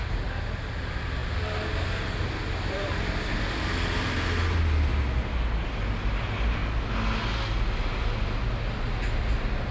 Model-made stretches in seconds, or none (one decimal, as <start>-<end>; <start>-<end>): none